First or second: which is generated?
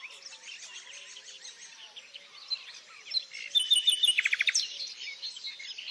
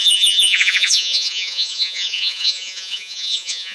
second